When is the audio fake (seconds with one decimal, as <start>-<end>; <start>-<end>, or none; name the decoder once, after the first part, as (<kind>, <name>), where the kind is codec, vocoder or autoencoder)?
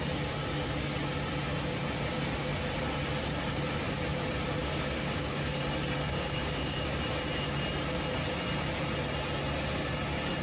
4.6-5.6 (codec, DAC); 6.1-6.9